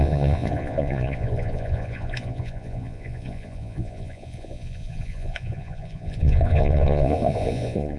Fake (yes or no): yes